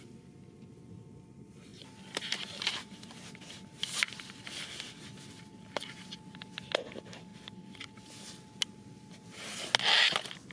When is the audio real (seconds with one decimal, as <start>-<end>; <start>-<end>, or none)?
0.0-1.7; 4.9-7.3; 8.1-10.5